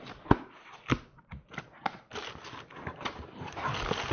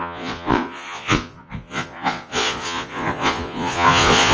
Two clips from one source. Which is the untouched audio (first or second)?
first